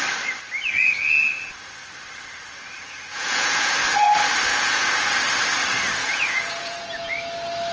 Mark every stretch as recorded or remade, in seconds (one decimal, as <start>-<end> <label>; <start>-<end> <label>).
0.0-2.8 recorded; 2.8-3.8 remade; 3.8-4.5 recorded; 4.5-5.2 remade; 5.2-6.0 recorded; 6.0-7.1 remade; 7.1-7.7 recorded